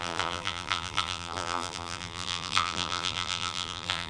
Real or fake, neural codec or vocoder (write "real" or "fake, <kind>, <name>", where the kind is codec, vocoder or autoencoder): fake, vocoder, BigVGAN v2